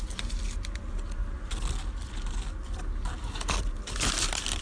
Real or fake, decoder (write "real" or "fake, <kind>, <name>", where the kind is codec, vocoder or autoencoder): real